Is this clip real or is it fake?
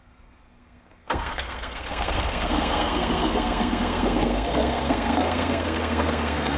fake